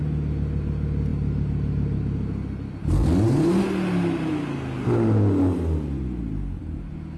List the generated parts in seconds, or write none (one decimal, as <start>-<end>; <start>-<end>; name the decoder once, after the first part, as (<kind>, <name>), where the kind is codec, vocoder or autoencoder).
none